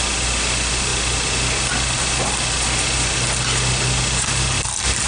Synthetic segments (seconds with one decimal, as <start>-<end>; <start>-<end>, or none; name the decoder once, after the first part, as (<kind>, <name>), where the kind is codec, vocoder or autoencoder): none